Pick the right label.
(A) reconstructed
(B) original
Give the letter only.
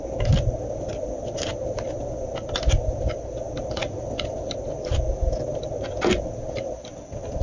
B